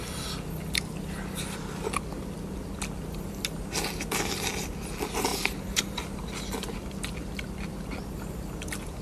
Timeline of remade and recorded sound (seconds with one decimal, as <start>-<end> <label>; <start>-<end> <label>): 0.0-9.0 recorded